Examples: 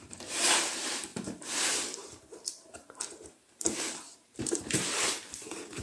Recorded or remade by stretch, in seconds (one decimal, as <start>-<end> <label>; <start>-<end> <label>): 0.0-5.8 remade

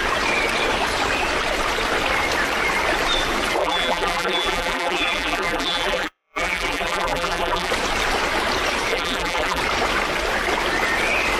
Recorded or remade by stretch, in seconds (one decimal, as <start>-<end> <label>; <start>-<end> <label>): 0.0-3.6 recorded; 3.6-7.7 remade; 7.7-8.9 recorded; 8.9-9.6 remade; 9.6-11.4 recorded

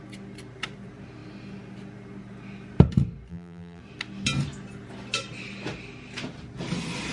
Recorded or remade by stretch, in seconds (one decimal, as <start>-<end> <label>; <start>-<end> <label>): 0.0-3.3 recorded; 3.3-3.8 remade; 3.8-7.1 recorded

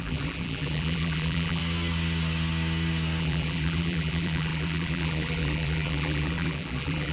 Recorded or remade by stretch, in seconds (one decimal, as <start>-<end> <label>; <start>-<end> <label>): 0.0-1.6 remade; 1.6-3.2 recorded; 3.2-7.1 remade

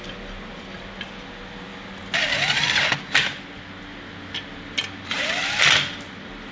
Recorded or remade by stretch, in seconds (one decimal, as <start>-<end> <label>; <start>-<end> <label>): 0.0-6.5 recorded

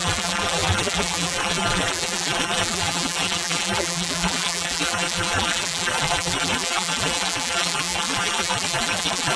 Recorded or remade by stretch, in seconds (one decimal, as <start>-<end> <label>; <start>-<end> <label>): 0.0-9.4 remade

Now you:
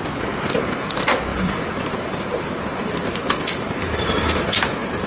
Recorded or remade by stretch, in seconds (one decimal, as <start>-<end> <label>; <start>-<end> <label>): 0.0-1.3 recorded; 1.3-4.4 remade; 4.4-5.1 recorded